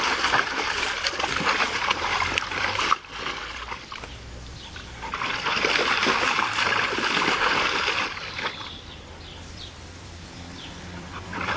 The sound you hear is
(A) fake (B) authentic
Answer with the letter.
A